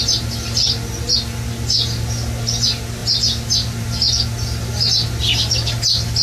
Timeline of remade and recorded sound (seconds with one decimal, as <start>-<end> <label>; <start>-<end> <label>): 0.0-6.2 recorded